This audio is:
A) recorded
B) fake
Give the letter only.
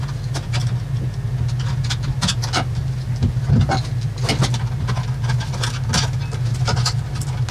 A